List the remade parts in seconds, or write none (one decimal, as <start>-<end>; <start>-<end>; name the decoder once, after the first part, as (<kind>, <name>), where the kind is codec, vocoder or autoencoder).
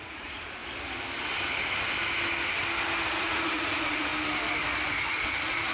0.0-0.6 (vocoder, Vocos); 3.1-4.1; 5.1-5.7